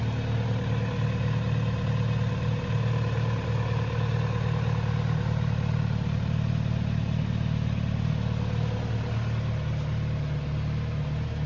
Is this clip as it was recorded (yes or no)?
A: yes